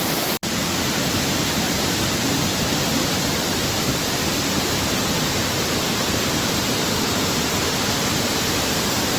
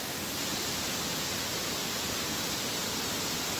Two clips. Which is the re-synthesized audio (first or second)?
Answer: first